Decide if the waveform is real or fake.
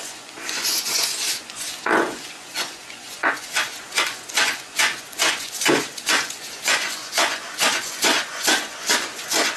fake